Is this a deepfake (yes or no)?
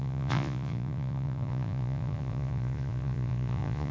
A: yes